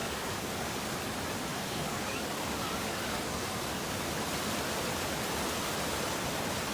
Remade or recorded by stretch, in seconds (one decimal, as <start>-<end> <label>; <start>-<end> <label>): 0.0-1.0 remade; 1.0-1.5 recorded; 1.5-4.1 remade; 4.1-6.7 recorded